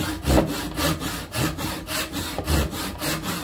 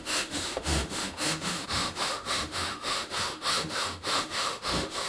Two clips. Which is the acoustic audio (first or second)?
first